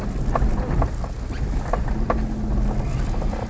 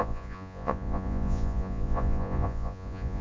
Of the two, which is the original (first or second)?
first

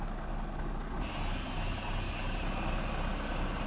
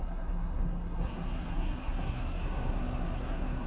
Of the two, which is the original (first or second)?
first